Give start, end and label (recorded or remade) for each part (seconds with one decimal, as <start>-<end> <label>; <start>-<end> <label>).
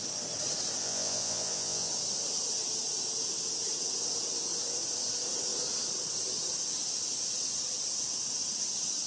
0.0-0.8 recorded; 0.8-1.9 remade; 1.9-9.1 recorded